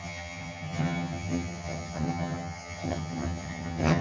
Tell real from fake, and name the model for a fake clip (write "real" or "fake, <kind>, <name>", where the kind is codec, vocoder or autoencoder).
fake, vocoder, HiFi-GAN